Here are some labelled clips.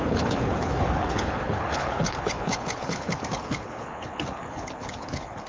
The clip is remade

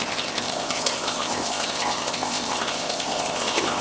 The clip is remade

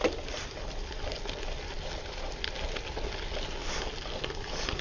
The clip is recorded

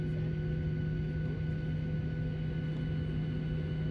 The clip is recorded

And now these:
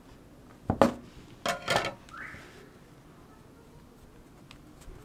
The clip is recorded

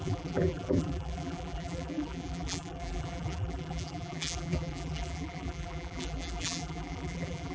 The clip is remade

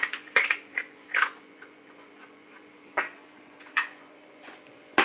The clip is remade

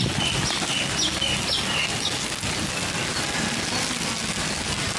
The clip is recorded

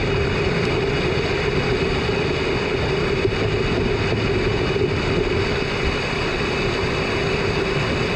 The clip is recorded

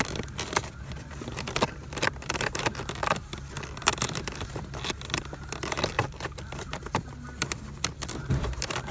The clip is remade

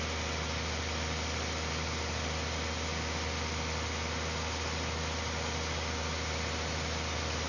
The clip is recorded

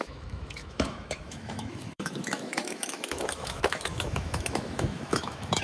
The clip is remade